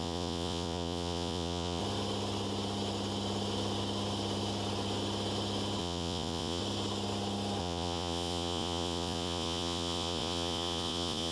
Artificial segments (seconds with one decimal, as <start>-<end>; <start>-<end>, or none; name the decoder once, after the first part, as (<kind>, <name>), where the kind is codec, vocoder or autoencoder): 0.0-1.8 (vocoder, Vocos); 5.8-6.6; 7.6-11.3